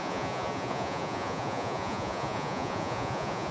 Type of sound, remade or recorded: remade